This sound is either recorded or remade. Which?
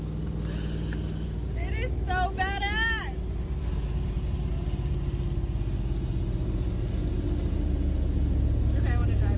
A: recorded